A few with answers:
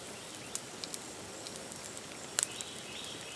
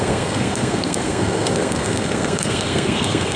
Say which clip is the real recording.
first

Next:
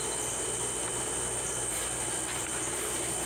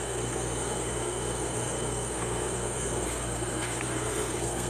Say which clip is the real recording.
first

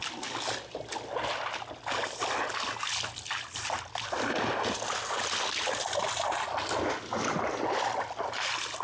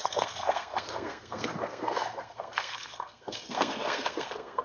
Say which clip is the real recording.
first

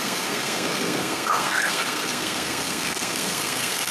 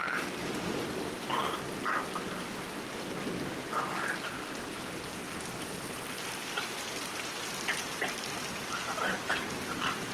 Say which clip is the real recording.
second